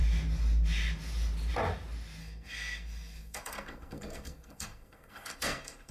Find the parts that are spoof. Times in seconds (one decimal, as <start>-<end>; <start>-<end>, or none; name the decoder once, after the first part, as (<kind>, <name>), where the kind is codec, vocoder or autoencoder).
2.2-5.9 (codec, SNAC)